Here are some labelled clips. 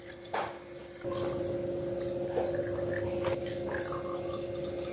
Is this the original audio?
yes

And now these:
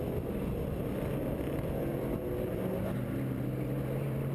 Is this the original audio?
yes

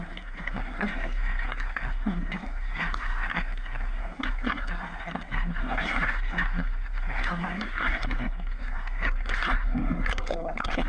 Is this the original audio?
no